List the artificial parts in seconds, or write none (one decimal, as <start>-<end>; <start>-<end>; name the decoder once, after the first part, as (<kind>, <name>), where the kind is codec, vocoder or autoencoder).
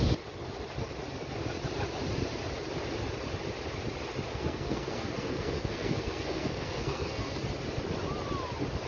4.3-7.4 (codec, SNAC)